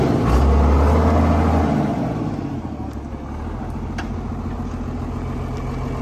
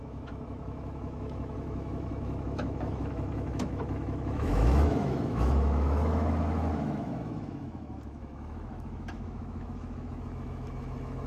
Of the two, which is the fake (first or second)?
second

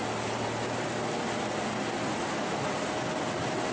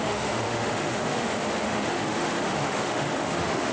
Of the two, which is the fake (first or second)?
second